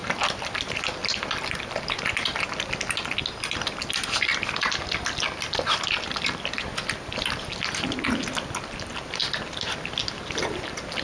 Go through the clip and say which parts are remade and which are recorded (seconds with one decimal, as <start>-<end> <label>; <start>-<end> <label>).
0.0-11.0 recorded